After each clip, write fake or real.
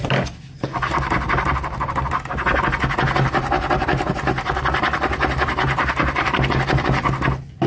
real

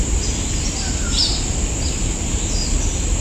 real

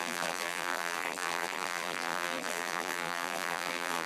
fake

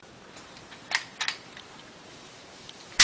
fake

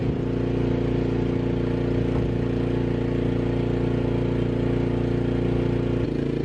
real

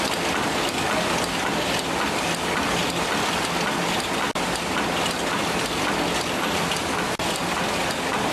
real